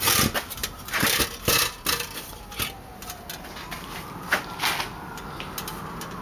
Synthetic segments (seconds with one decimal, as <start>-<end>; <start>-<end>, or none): 0.6-1.2